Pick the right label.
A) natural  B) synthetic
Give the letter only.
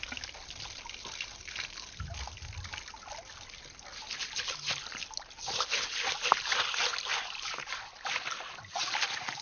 A